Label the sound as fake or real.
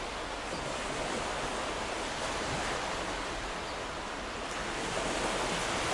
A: real